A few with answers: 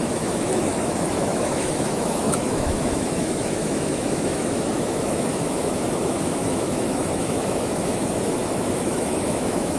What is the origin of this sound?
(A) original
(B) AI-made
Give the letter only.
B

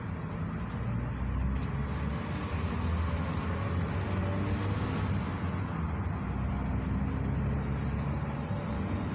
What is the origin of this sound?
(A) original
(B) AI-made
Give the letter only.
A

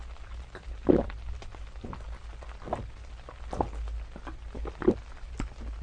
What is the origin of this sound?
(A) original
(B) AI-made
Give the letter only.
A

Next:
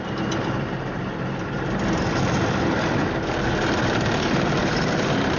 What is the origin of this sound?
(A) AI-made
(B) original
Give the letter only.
A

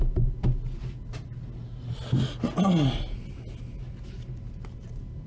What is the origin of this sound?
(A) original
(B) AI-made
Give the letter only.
A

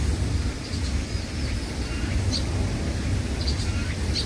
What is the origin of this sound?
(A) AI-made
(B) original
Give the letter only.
B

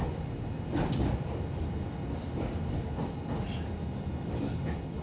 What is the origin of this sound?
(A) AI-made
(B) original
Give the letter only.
B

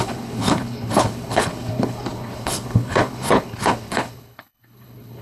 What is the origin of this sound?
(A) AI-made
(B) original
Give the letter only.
A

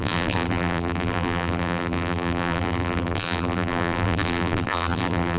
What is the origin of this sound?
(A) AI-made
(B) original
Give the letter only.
A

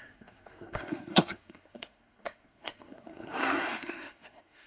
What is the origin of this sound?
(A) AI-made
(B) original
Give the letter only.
A